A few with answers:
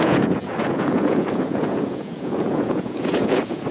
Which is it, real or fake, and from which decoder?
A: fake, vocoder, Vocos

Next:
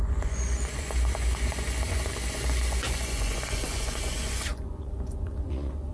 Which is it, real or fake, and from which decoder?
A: fake, vocoder, Vocos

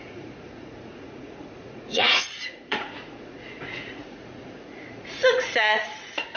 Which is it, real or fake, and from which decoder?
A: fake, vocoder, Vocos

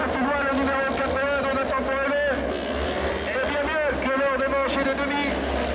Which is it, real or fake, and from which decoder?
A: real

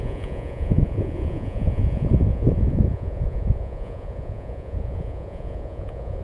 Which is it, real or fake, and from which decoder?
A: fake, vocoder, Vocos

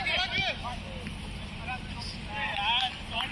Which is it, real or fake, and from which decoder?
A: real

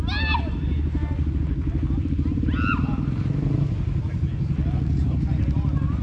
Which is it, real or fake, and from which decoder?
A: real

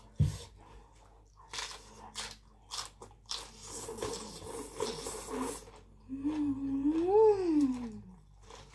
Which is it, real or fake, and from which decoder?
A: real